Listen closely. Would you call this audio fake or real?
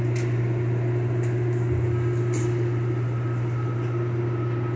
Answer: real